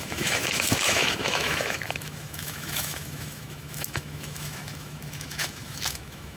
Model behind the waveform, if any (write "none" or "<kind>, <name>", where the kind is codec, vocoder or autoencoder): autoencoder, DAC-VAE